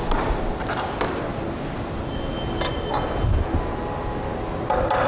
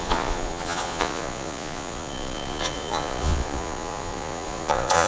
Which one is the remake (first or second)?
second